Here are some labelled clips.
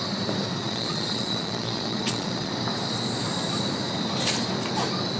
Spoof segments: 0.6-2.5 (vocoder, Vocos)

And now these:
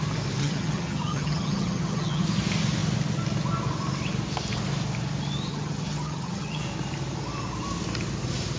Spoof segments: 0.4-2.2 (vocoder, HiFi-GAN); 5.5-6.6

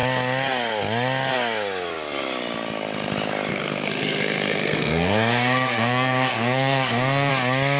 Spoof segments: 3.5-7.3 (codec, SNAC)

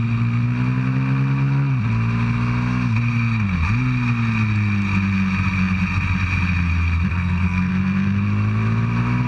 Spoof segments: 7.1-7.7 (codec, SNAC)